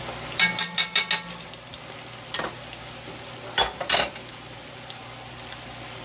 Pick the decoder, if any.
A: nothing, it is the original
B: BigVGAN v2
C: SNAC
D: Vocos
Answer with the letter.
A